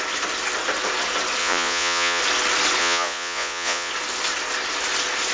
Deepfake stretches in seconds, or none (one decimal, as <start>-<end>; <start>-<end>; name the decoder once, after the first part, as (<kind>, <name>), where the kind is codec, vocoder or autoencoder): 1.4-2.2 (vocoder, Vocos); 2.8-3.9